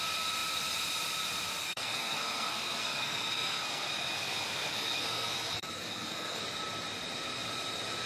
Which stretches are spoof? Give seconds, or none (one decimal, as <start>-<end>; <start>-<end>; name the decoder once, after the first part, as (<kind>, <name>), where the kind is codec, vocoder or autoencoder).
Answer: 1.6-6.4 (codec, SNAC)